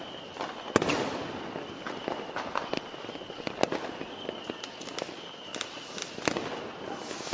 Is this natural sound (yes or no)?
yes